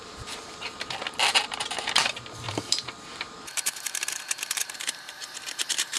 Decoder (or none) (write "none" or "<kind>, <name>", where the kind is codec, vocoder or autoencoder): vocoder, BigVGAN v2